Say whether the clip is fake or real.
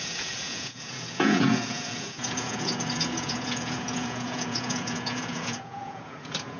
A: fake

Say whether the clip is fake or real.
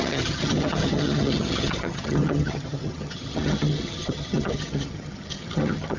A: fake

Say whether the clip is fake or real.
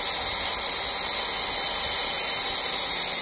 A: real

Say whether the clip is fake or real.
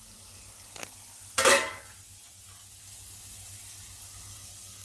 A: real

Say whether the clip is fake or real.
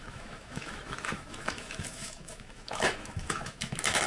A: fake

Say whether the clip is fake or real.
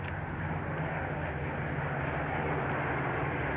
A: real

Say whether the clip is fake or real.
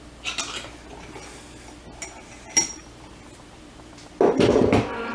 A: real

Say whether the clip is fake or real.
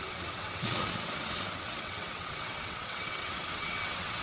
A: fake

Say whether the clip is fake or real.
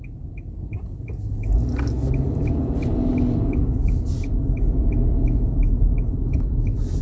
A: real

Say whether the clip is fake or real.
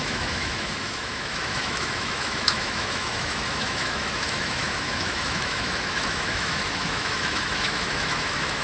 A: fake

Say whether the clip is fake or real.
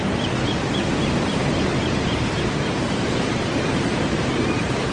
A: fake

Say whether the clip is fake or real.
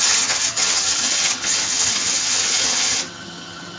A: fake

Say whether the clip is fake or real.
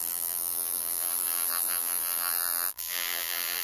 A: fake